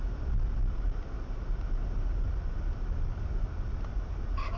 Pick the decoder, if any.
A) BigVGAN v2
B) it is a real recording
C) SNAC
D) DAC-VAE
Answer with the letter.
A